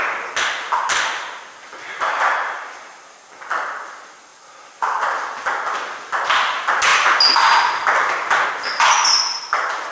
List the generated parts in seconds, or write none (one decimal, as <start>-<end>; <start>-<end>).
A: none